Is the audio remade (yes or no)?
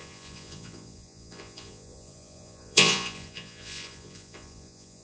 yes